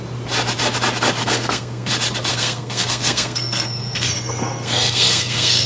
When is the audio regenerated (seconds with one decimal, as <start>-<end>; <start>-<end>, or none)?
1.2-1.9; 2.3-5.7